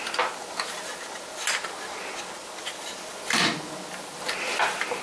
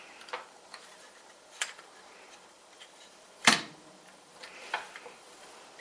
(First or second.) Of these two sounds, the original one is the first